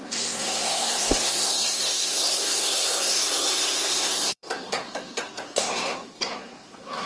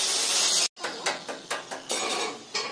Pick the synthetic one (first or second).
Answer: first